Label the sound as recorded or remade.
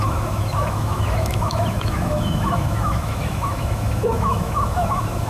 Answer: remade